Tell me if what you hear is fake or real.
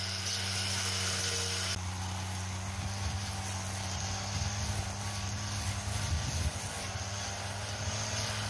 real